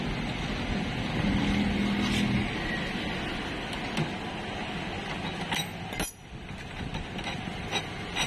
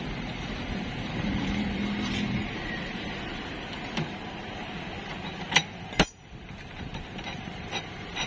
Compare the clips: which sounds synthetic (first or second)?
second